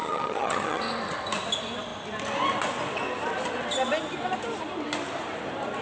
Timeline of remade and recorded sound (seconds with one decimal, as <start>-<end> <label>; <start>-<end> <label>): 0.0-0.8 remade; 0.8-5.8 recorded